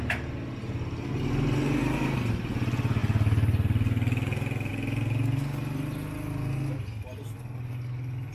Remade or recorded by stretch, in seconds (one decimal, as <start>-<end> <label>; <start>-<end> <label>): 0.0-8.3 recorded